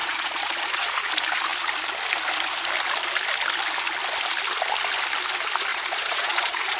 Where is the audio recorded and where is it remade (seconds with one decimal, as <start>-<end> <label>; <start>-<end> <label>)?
0.0-1.1 remade; 1.1-5.7 recorded; 5.7-6.8 remade